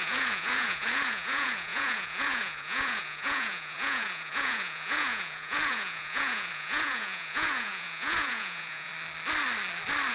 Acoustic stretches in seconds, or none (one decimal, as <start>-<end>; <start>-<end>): 8.9-10.1